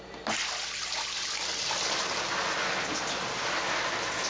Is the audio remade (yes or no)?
no